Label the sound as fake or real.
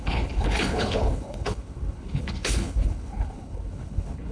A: fake